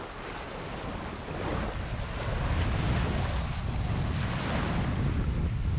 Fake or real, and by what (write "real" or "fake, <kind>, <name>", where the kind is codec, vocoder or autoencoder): real